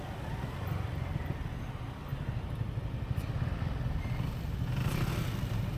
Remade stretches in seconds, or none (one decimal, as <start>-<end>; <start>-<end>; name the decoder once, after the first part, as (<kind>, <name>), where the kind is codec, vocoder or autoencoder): none